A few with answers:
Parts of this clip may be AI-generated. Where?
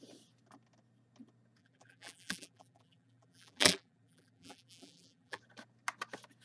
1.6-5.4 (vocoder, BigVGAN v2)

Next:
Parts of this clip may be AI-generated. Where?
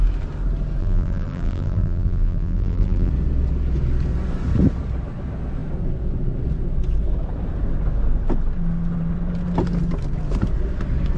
0.8-3.1 (vocoder, BigVGAN v2)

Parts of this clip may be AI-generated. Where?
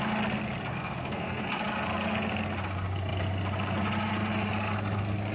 0.7-1.6 (codec, SNAC)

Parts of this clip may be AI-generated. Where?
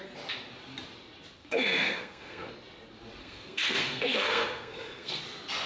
1.4-2.5 (codec, SNAC); 3.2-5.2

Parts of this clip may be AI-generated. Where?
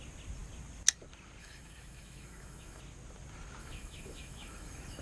1.4-2.8 (autoencoder, DAC-VAE); 3.6-5.0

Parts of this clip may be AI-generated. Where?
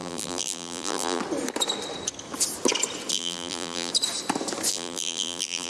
0.0-1.2 (vocoder, BigVGAN v2); 3.1-3.9; 4.7-5.7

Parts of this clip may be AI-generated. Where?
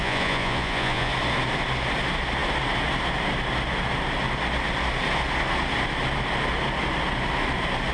0.0-1.1 (vocoder, Vocos)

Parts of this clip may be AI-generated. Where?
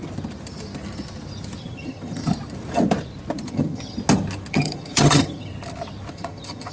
1.6-2.2 (vocoder, HiFi-GAN); 3.5-4.0; 4.5-5.5; 6.1-6.7